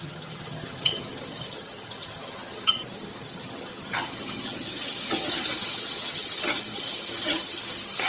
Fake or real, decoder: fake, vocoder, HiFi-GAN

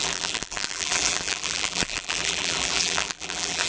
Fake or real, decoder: fake, vocoder, BigVGAN v2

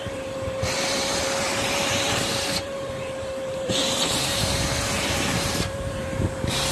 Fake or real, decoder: fake, vocoder, BigVGAN v2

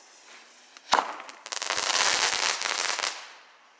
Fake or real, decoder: real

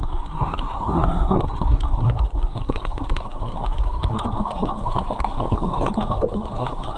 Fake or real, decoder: fake, codec, SNAC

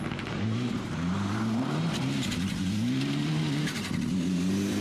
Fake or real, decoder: fake, vocoder, BigVGAN v2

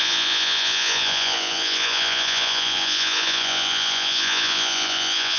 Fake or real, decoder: fake, vocoder, Vocos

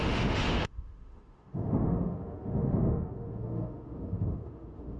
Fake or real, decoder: fake, autoencoder, DAC-VAE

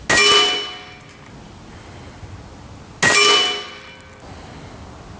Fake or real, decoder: real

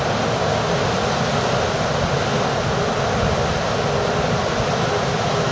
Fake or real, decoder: real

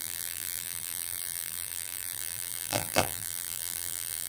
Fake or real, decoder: fake, vocoder, BigVGAN v2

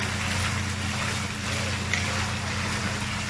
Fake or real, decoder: real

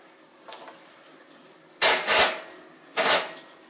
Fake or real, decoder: real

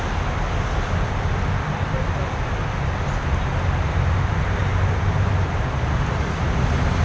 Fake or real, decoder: real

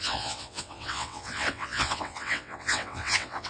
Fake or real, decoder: fake, vocoder, WaveNeXt